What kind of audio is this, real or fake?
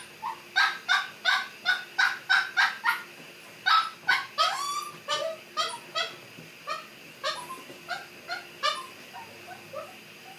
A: real